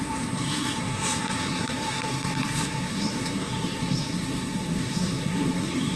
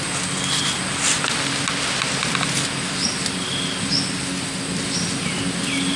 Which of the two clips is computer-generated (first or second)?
first